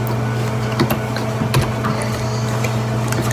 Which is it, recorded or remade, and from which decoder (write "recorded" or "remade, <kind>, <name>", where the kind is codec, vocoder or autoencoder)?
recorded